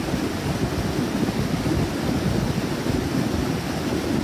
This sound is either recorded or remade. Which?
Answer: recorded